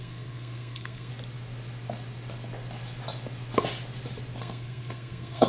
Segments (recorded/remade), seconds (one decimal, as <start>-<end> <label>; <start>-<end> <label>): 0.0-1.1 remade; 1.1-4.4 recorded; 4.4-5.5 remade